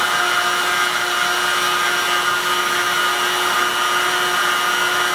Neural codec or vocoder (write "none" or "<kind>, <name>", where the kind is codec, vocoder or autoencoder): none